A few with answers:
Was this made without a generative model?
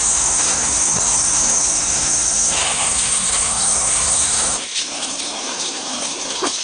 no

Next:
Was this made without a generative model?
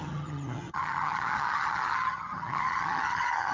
no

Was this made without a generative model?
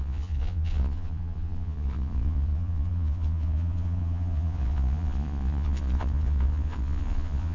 no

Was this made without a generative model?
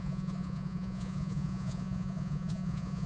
no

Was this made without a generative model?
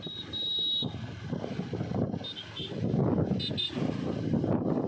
yes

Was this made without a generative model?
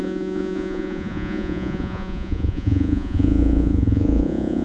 no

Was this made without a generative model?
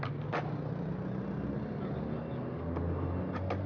yes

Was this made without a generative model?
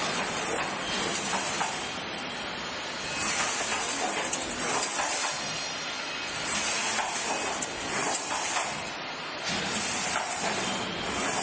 yes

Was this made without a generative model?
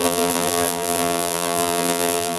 no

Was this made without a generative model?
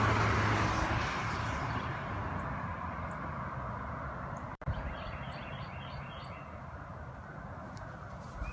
yes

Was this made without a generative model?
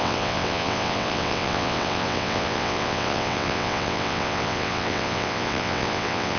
no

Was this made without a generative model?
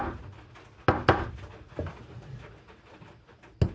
yes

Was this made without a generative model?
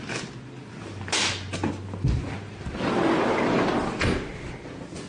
yes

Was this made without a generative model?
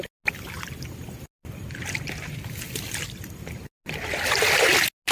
yes